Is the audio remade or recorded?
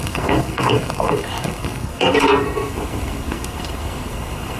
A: remade